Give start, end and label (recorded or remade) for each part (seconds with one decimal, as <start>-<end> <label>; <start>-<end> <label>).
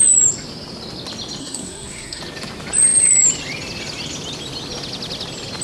0.0-1.4 recorded; 1.4-2.2 remade; 2.2-5.6 recorded